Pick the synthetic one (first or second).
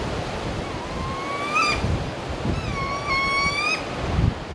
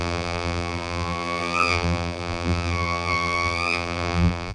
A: second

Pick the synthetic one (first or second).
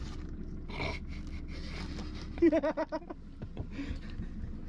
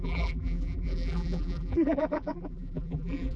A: second